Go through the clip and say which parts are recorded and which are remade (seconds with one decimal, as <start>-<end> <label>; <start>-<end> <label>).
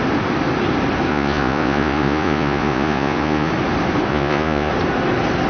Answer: 0.0-1.1 recorded; 1.1-3.5 remade; 3.5-4.1 recorded; 4.1-4.7 remade; 4.7-5.5 recorded